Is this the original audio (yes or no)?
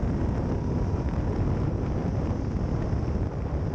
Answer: yes